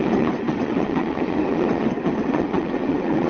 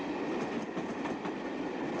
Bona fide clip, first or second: second